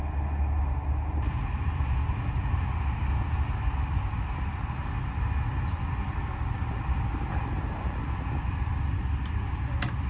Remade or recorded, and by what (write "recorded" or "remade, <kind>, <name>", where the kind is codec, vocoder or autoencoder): recorded